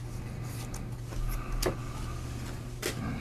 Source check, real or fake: real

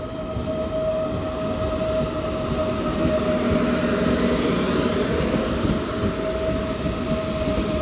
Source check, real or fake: real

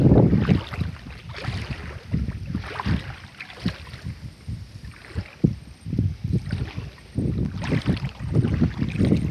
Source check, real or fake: real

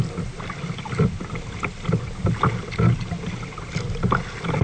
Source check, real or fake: real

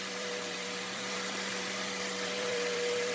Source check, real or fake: fake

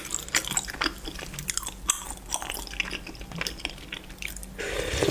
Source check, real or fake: real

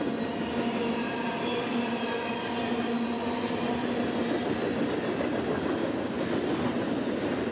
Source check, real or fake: real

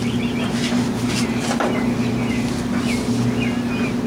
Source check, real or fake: real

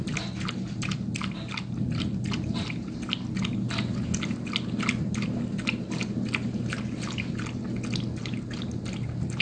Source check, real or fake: real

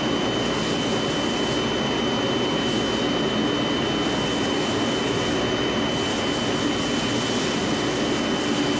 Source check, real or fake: real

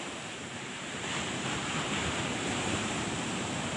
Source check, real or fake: fake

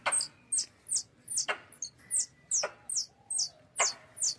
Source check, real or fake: real